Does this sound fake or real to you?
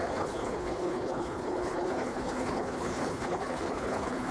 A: fake